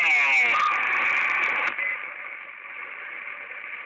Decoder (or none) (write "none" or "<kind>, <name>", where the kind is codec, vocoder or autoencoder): none